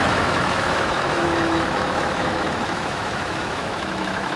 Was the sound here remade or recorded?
remade